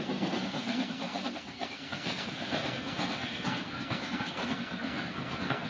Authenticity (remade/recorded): remade